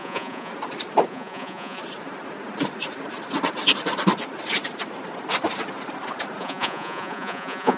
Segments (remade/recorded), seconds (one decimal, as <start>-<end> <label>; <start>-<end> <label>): 0.0-0.5 remade; 0.5-1.1 recorded; 1.1-1.8 remade; 1.8-6.4 recorded; 6.4-7.8 remade